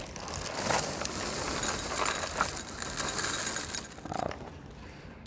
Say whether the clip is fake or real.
real